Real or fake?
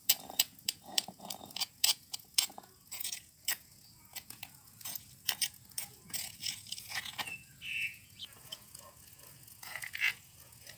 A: fake